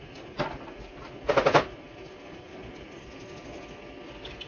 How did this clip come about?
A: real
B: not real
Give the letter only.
A